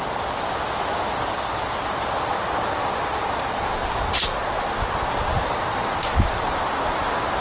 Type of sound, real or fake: real